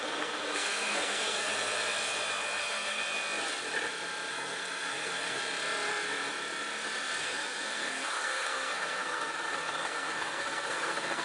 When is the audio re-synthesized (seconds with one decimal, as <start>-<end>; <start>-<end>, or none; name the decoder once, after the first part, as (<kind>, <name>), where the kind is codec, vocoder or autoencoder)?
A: 0.0-1.5 (codec, SNAC); 2.6-3.0; 4.3-5.4; 7.2-11.2